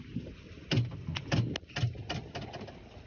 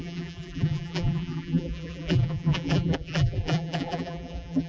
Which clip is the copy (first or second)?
second